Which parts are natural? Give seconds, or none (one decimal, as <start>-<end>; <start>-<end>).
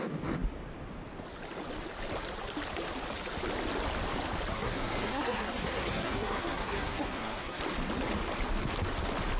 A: 0.0-4.5; 7.6-9.4